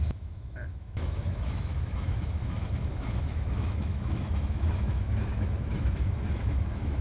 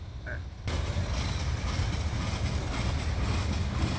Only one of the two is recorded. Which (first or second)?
second